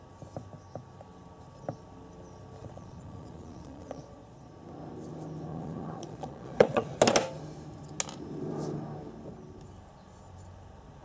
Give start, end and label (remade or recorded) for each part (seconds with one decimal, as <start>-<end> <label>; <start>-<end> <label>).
0.0-2.6 recorded; 2.6-4.5 remade; 4.5-5.5 recorded; 5.5-7.0 remade; 7.0-11.0 recorded